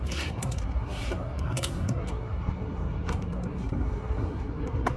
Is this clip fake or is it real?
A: fake